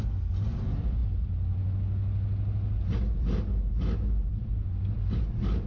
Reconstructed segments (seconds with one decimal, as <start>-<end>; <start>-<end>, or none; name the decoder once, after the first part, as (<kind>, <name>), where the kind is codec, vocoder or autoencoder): none